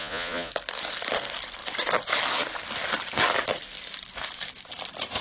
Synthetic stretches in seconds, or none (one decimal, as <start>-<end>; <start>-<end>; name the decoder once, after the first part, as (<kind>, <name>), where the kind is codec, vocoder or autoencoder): 0.0-0.5 (vocoder, Vocos)